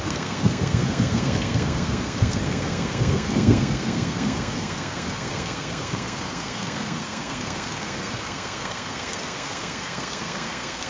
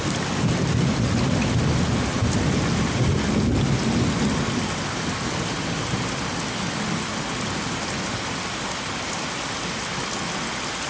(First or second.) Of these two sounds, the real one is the second